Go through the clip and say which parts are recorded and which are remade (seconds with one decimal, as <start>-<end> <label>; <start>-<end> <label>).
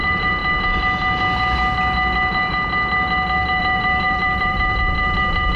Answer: 0.0-0.4 remade; 0.4-3.6 recorded; 3.6-5.6 remade